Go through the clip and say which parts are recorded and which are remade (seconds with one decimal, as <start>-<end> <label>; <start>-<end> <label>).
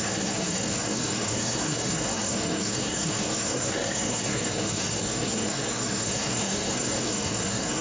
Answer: 0.0-7.8 remade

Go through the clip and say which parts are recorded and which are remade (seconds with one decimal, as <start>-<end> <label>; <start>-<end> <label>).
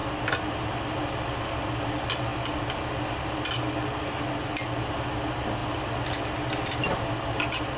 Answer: 0.0-7.8 recorded